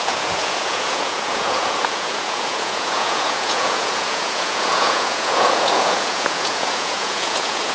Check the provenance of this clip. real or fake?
fake